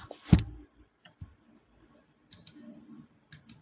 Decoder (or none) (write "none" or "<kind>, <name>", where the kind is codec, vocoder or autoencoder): none